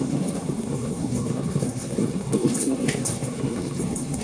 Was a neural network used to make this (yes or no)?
yes